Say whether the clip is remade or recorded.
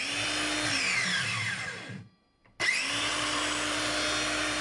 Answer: recorded